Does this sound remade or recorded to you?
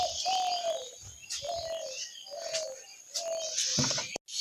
recorded